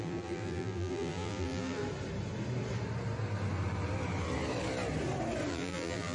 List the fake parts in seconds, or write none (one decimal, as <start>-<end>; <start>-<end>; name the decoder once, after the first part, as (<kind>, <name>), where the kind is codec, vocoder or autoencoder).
0.0-1.8 (vocoder, BigVGAN v2); 5.5-6.1